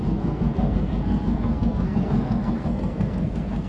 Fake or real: fake